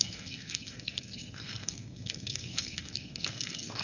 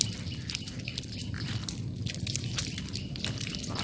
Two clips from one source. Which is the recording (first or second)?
second